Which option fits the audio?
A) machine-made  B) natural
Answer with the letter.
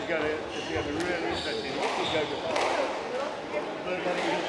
B